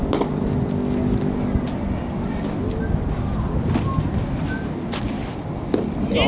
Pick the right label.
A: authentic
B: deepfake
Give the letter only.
A